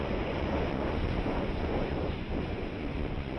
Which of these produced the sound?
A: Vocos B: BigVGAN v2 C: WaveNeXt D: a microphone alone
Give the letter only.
A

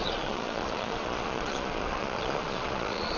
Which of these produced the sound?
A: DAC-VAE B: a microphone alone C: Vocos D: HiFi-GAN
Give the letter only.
C